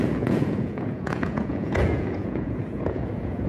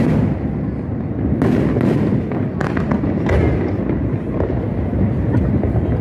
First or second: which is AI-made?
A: first